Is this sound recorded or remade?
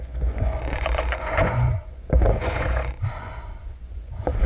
remade